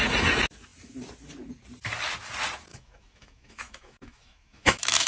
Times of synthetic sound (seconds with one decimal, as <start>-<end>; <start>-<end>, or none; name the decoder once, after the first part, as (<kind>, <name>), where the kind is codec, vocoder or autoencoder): 2.7-5.1 (autoencoder, DAC-VAE)